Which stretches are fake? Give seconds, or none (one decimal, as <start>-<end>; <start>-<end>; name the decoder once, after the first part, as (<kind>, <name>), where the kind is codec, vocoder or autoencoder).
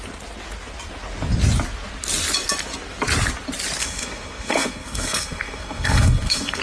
3.8-6.6 (codec, SNAC)